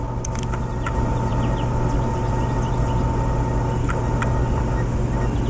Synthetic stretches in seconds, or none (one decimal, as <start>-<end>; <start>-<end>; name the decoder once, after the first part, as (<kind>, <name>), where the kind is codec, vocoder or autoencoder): none